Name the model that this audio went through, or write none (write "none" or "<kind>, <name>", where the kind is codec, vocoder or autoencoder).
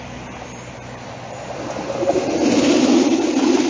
none